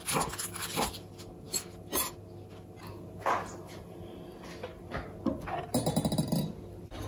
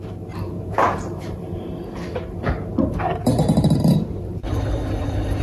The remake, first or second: second